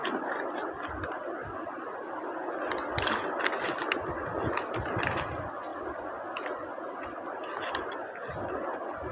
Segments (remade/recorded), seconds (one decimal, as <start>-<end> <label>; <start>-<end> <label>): 0.0-9.1 recorded